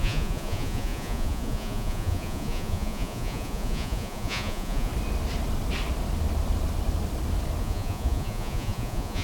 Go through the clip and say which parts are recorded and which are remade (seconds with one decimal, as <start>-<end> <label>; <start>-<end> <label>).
0.0-4.9 remade; 4.9-7.6 recorded; 7.6-9.2 remade